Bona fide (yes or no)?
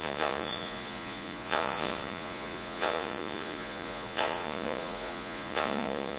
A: no